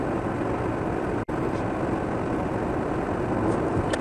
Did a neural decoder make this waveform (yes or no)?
no